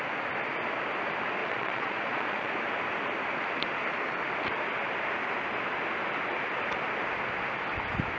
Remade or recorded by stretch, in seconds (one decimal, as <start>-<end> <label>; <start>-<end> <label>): 0.0-1.4 recorded; 1.4-2.5 remade; 2.5-8.2 recorded